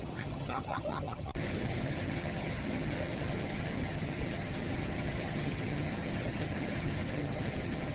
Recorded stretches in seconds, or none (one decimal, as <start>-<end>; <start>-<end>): none

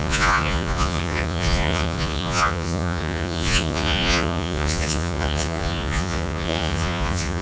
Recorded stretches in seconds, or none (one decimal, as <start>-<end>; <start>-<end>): none

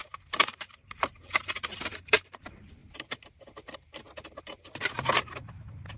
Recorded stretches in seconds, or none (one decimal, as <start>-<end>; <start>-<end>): 2.8-4.4

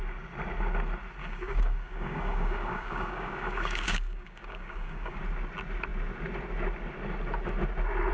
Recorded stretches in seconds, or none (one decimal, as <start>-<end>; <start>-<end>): 0.0-1.2; 5.2-8.1